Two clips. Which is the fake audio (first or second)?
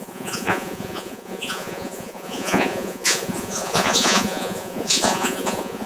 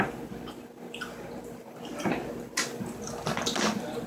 first